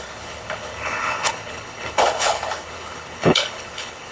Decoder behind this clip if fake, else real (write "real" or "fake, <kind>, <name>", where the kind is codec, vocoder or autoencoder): fake, codec, HILCodec